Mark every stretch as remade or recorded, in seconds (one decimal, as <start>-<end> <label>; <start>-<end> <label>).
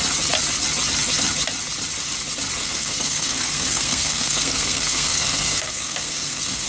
0.0-2.6 recorded; 2.6-6.7 remade